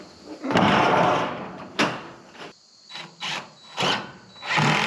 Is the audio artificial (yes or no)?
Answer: no